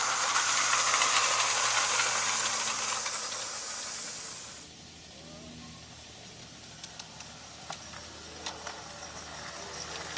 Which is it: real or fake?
real